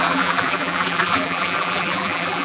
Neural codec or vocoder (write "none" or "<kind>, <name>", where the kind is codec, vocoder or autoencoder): vocoder, BigVGAN v2